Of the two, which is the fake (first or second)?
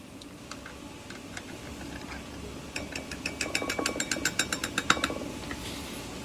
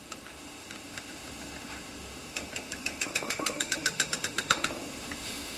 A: second